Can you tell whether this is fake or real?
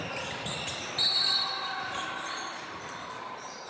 real